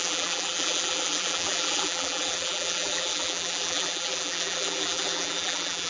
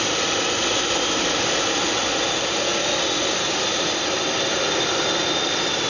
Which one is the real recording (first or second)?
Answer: second